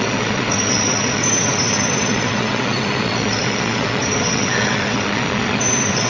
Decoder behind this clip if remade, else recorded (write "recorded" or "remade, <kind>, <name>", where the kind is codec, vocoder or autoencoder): remade, vocoder, WaveNeXt